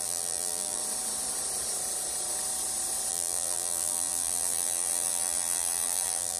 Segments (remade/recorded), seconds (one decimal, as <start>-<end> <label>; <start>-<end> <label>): 0.0-0.8 remade; 0.8-3.1 recorded; 3.1-6.4 remade